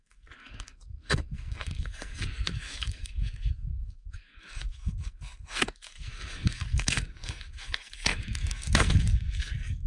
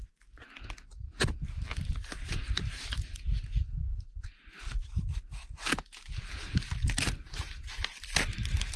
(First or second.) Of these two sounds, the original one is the second